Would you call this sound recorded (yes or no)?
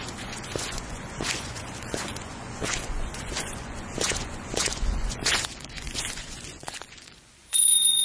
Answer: no